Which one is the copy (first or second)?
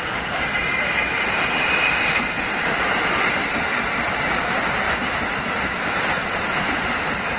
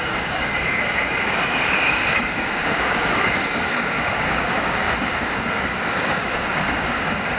second